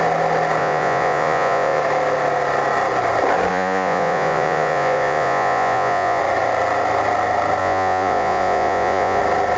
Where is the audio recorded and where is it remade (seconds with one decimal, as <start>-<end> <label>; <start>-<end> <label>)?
0.0-0.6 recorded; 0.6-1.8 remade; 1.8-3.5 recorded; 3.5-6.2 remade; 6.2-7.6 recorded; 7.6-9.2 remade; 9.2-9.6 recorded